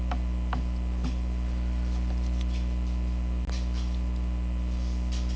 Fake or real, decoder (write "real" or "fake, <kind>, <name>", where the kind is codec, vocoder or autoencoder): real